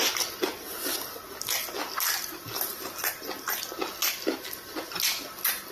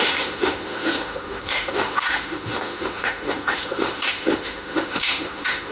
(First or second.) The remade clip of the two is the second